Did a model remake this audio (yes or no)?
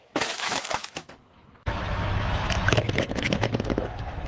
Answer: yes